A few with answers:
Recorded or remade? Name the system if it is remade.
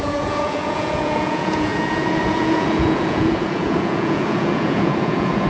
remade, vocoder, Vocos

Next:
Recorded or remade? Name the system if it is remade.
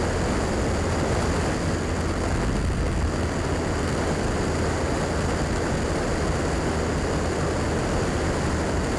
recorded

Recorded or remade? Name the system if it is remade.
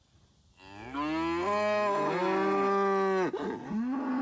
recorded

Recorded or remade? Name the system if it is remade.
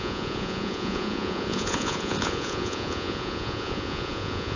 remade, vocoder, Vocos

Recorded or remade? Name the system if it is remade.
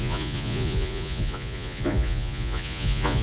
remade, vocoder, Vocos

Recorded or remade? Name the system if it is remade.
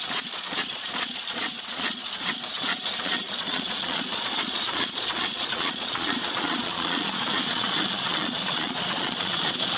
remade, vocoder, Vocos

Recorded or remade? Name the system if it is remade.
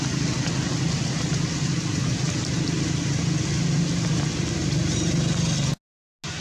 recorded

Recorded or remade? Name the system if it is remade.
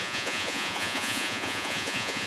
remade, vocoder, Vocos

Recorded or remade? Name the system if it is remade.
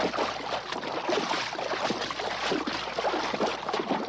recorded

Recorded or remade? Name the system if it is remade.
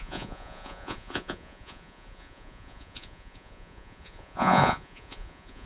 remade, vocoder, Vocos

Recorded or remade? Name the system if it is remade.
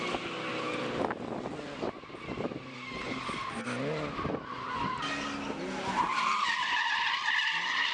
recorded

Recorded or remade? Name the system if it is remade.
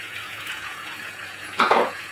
remade, vocoder, Vocos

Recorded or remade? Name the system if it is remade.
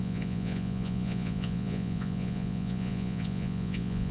remade, vocoder, Vocos